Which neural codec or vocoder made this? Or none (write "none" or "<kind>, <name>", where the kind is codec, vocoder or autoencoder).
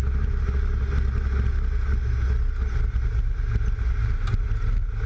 none